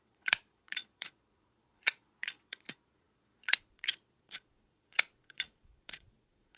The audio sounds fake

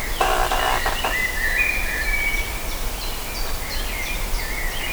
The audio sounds real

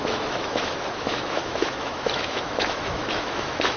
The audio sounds fake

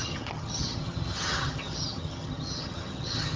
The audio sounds fake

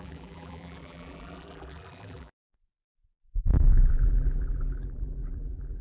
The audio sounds fake